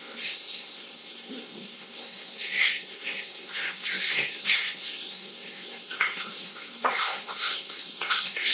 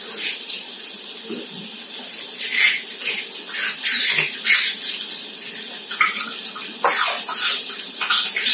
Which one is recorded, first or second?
second